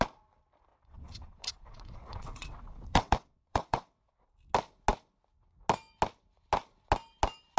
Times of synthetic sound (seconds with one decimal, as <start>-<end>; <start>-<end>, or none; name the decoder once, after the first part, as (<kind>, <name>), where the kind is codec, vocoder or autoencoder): 0.7-4.2 (vocoder, WaveNeXt)